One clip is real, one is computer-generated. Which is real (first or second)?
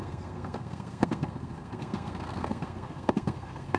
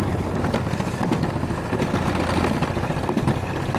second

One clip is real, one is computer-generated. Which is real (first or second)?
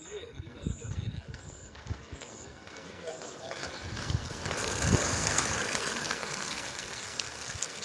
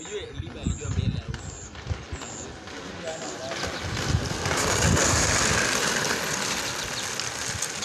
second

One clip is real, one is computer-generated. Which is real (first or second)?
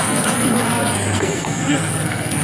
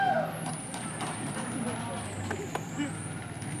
second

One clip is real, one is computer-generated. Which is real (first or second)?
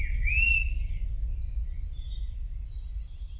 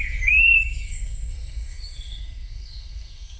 first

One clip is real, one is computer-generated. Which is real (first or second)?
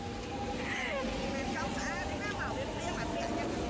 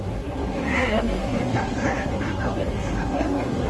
first